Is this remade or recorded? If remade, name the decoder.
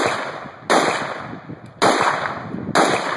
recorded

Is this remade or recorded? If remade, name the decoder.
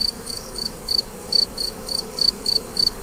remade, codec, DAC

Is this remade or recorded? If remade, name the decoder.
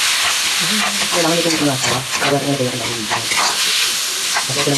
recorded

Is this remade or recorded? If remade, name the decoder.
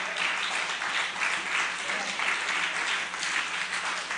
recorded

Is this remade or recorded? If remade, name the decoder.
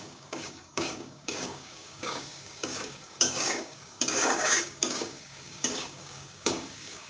remade, codec, DAC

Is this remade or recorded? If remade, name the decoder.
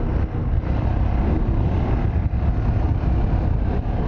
recorded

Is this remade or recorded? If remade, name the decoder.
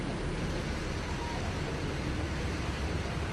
remade, vocoder, BigVGAN v2